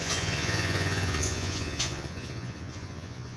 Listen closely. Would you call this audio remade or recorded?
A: remade